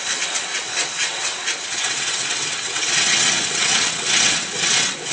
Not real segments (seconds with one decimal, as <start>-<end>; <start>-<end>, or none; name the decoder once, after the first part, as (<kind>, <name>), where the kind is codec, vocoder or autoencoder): 0.0-5.1 (vocoder, WaveNeXt)